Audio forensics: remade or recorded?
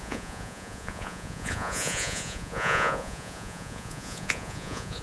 remade